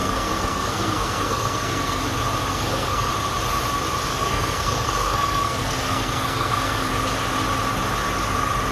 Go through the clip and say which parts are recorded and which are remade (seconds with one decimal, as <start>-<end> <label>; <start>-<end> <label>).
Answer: 0.0-2.0 remade; 2.0-2.5 recorded; 2.5-3.1 remade; 3.1-4.1 recorded; 4.1-6.9 remade; 6.9-8.7 recorded